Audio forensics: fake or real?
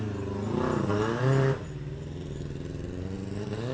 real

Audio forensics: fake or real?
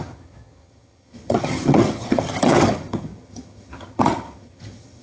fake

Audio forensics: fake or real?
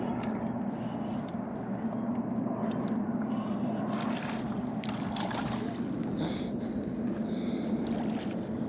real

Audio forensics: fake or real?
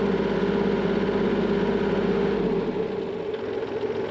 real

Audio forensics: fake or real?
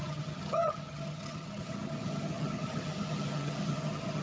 fake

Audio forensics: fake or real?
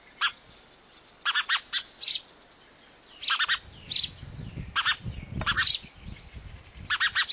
real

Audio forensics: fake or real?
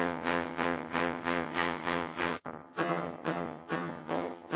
fake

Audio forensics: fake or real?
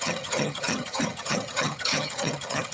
fake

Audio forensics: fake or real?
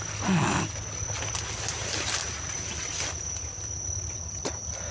real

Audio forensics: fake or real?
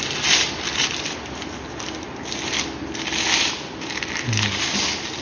real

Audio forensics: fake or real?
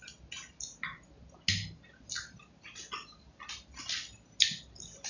real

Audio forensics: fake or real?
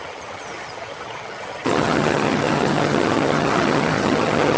fake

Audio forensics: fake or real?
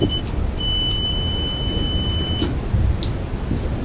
real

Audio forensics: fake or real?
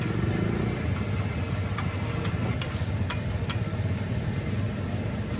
real